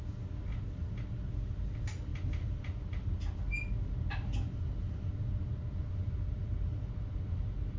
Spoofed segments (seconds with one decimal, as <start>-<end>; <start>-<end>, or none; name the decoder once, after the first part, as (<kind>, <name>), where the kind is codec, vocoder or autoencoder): none